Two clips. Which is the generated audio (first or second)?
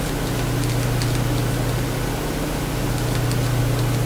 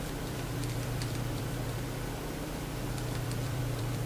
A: second